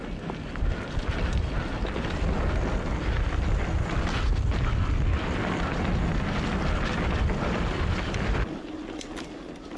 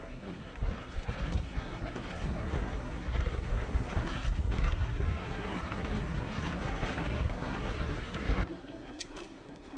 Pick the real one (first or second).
first